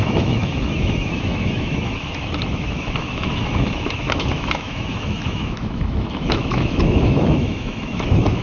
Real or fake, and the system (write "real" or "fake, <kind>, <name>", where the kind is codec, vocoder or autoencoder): fake, autoencoder, DAC-VAE